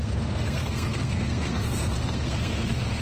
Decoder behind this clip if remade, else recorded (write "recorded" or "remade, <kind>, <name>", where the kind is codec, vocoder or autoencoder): remade, codec, SNAC